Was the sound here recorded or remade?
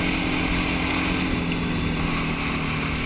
recorded